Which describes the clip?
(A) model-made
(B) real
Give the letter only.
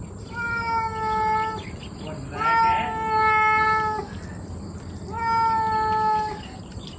B